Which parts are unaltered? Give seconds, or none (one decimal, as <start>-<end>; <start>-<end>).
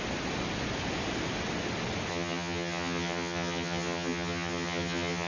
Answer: 0.0-2.1